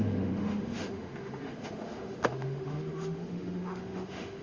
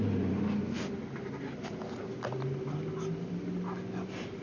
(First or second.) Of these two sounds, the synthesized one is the first